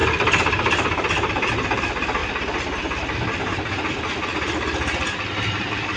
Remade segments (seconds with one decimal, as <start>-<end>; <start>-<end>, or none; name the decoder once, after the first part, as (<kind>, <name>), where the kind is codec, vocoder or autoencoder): 0.0-1.5 (vocoder, BigVGAN v2); 2.2-6.0